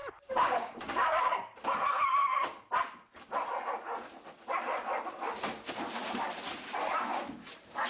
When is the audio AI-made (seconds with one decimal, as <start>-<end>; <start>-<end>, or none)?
0.0-1.2